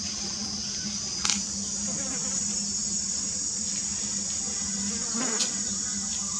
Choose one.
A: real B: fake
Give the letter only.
A